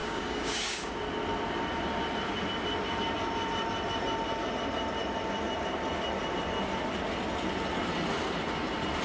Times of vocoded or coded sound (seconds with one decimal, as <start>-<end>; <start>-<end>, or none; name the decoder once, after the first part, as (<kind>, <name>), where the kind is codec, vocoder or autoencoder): 0.0-0.9 (codec, DAC)